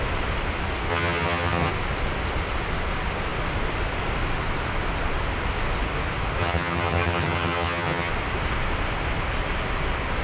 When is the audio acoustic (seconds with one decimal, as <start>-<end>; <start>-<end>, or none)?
0.0-0.9; 1.7-6.4; 8.1-10.2